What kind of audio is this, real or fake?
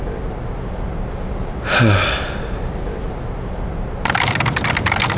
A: real